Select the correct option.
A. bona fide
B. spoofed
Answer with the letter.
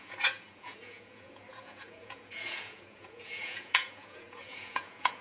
B